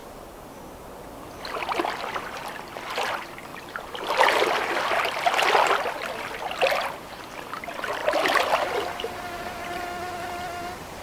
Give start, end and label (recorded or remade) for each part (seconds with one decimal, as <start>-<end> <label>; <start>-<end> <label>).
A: 0.0-0.9 remade; 0.9-3.5 recorded; 3.5-4.0 remade; 4.0-11.0 recorded